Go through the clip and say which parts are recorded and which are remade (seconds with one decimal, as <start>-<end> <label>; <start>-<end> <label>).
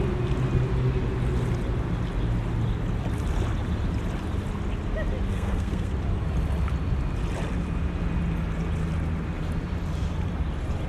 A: 0.0-5.3 recorded; 5.3-5.9 remade; 5.9-10.9 recorded